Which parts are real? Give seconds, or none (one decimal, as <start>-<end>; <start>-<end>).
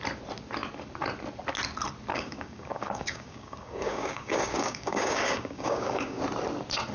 0.0-2.1; 6.2-6.9